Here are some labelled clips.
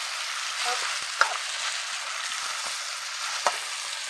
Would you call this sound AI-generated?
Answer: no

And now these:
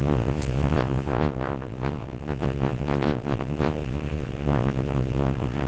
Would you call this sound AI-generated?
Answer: yes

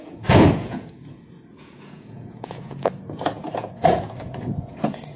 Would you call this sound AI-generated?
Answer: yes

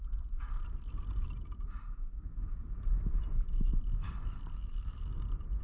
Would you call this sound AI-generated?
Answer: no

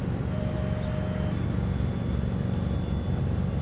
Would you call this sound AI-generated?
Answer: no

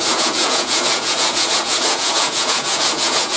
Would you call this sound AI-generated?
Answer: yes